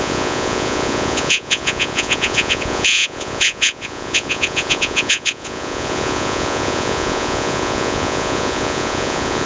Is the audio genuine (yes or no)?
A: no